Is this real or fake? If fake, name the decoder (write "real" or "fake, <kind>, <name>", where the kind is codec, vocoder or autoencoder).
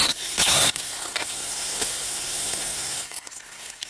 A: fake, codec, SNAC